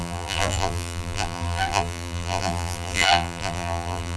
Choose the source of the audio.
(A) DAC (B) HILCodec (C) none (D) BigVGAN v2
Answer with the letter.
D